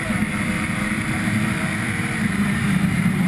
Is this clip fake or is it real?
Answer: fake